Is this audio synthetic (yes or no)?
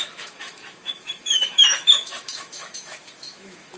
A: yes